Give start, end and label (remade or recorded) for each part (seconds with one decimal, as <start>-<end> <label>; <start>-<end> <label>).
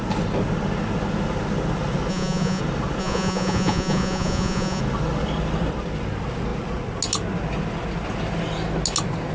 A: 0.0-2.1 recorded; 2.1-2.6 remade; 2.6-3.0 recorded; 3.0-4.8 remade; 4.8-9.3 recorded